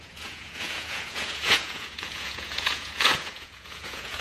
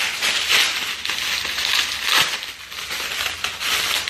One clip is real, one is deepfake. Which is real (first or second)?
second